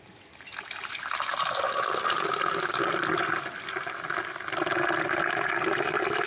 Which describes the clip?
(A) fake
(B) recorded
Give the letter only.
B